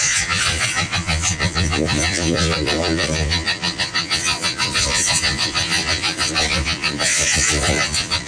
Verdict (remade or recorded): remade